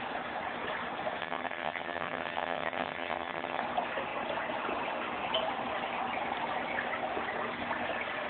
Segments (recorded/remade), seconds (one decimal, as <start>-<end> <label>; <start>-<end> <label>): 0.0-1.2 recorded; 1.2-3.6 remade; 3.6-8.3 recorded